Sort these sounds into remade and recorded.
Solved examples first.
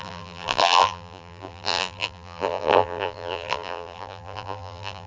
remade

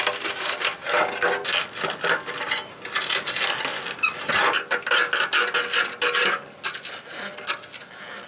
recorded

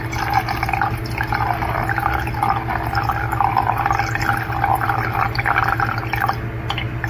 recorded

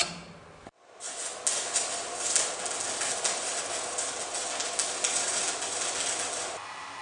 recorded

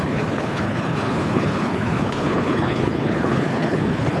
remade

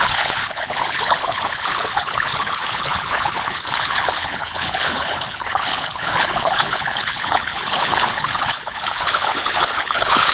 remade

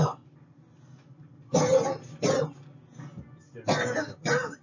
recorded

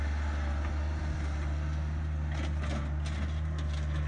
recorded